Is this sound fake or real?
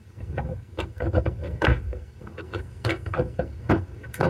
fake